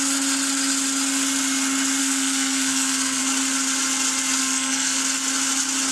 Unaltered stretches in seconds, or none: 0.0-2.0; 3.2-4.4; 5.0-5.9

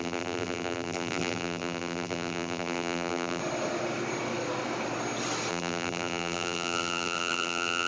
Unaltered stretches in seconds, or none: 3.4-5.5

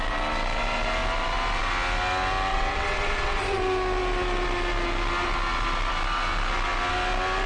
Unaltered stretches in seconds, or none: 0.0-2.5; 3.6-7.5

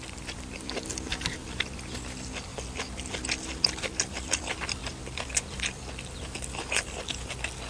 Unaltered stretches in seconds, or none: 0.0-7.7

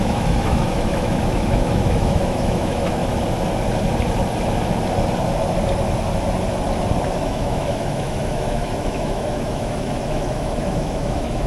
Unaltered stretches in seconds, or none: 3.0-7.2

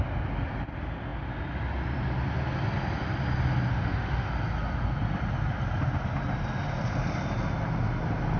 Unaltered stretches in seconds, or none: 0.0-3.7; 4.3-8.4

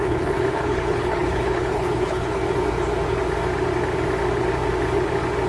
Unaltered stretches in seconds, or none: 2.4-5.5

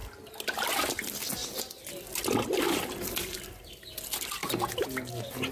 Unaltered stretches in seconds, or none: 0.0-5.5